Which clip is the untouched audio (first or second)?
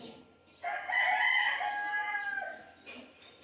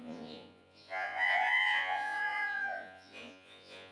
first